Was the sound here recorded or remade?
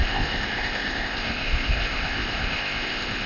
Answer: remade